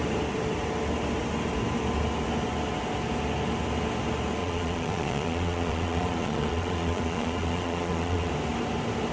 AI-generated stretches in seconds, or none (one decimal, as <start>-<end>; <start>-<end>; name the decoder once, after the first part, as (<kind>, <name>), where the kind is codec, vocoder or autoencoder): 4.4-8.3 (vocoder, Vocos)